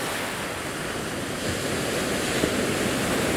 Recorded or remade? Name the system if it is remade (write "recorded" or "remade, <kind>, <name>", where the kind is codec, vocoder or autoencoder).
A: recorded